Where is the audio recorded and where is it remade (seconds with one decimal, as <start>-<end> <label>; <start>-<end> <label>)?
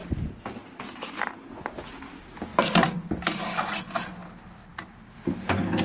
0.0-5.8 recorded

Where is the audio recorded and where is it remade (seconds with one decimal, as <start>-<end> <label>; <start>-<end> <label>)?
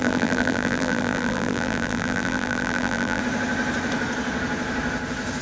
0.0-3.2 remade; 3.2-5.4 recorded